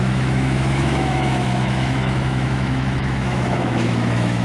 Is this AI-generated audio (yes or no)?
yes